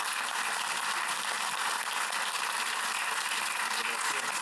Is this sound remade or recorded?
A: recorded